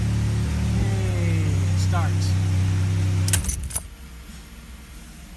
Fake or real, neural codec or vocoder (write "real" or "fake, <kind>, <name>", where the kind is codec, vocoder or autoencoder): real